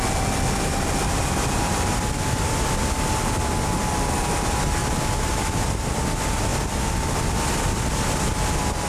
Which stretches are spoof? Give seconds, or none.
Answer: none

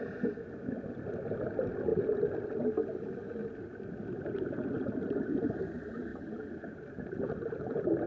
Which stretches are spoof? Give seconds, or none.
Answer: none

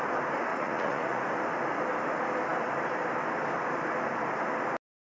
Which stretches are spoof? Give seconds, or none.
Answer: 0.5-1.2

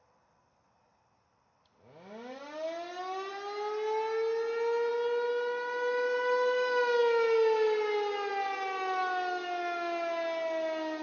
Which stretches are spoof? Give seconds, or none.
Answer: none

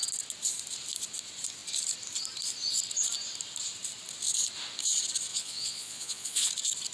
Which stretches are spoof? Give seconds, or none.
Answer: 5.3-6.5

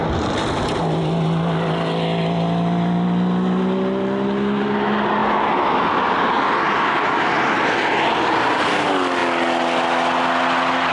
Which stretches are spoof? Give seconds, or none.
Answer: none

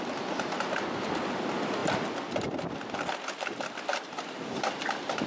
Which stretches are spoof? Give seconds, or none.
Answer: none

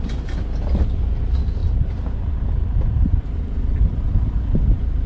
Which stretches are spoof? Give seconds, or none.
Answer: none